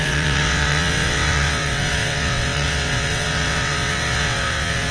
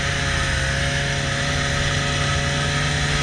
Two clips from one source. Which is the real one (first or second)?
second